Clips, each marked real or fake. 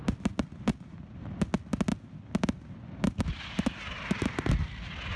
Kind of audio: real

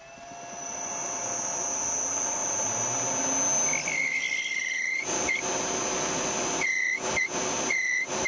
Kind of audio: real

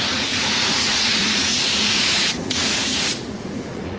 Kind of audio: fake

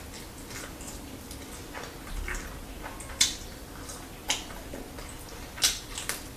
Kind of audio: real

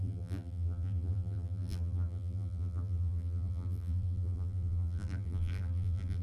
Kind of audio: fake